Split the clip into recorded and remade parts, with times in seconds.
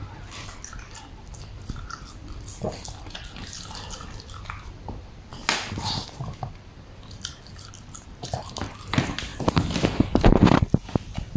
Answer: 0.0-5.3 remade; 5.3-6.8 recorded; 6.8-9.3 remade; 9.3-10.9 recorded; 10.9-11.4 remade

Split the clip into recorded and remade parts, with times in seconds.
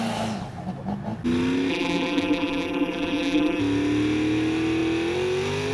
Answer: 0.0-1.7 recorded; 1.7-3.6 remade; 3.6-5.7 recorded